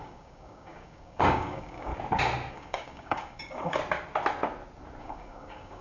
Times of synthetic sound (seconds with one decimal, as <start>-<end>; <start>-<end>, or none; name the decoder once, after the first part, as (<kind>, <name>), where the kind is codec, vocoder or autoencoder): 0.0-1.9 (codec, DAC); 2.5-3.8; 5.0-5.8